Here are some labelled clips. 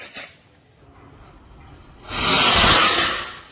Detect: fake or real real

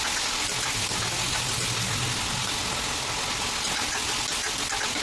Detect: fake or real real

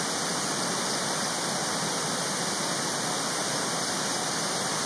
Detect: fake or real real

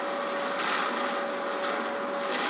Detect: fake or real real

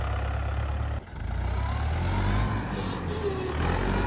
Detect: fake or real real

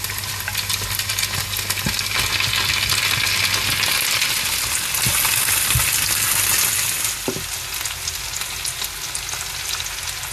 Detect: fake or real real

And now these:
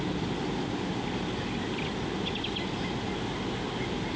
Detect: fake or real real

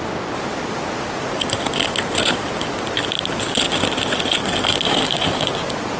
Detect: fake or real real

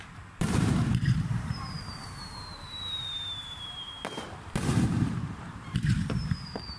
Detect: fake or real fake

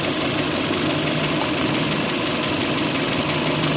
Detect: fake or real real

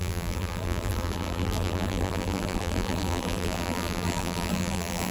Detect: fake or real fake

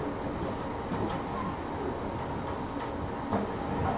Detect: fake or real real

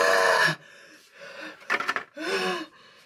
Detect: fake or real real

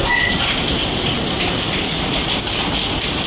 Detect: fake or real real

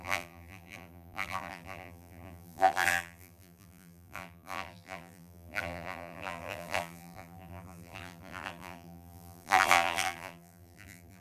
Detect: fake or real fake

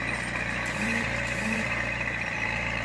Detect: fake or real fake